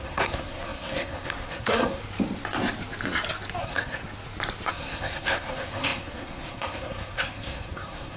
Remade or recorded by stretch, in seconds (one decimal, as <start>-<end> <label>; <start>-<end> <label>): 0.0-2.0 remade; 2.0-3.6 recorded; 3.6-4.0 remade; 4.0-4.7 recorded; 4.7-8.2 remade